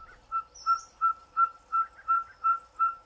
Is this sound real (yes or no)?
yes